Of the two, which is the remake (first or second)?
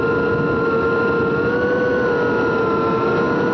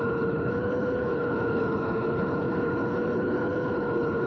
second